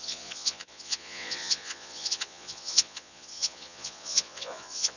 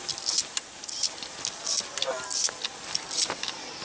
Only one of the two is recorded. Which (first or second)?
second